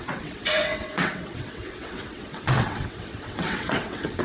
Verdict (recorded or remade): remade